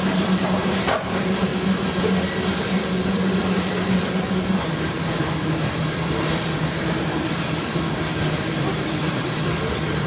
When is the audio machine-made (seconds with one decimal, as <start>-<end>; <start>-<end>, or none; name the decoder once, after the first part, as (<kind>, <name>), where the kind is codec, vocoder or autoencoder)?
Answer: 0.0-1.5 (vocoder, BigVGAN v2); 3.4-10.1